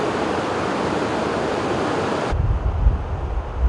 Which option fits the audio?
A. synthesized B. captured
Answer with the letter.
B